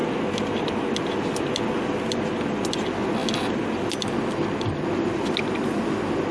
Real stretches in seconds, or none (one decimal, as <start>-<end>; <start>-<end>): 0.0-6.3